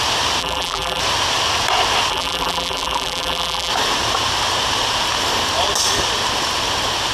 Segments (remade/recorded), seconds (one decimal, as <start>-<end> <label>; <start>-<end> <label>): 0.0-0.4 recorded; 0.4-1.0 remade; 1.0-2.1 recorded; 2.1-3.7 remade; 3.7-7.1 recorded

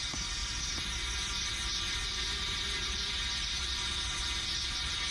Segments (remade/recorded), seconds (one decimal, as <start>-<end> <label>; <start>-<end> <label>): 0.0-5.1 recorded

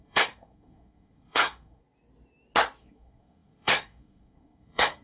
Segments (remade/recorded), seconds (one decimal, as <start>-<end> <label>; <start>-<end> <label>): 0.0-1.8 remade; 1.8-2.8 recorded; 2.8-5.0 remade

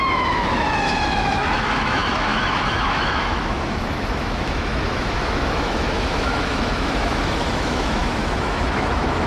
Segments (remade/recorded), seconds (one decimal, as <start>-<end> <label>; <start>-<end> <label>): 0.0-9.3 remade

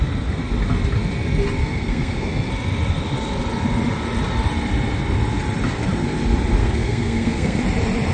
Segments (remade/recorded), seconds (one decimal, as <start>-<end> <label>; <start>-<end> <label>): 0.0-1.6 recorded; 1.6-2.5 remade; 2.5-6.6 recorded; 6.6-7.6 remade; 7.6-8.1 recorded

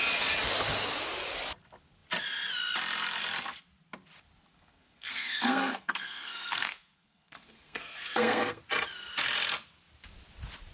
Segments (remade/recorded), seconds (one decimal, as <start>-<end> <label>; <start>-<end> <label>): 0.0-4.5 recorded; 4.5-8.6 remade; 8.6-10.7 recorded

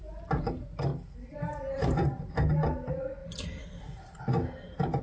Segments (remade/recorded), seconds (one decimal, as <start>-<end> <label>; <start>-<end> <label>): 0.0-0.9 recorded; 0.9-1.9 remade; 1.9-3.2 recorded; 3.2-4.2 remade; 4.2-5.0 recorded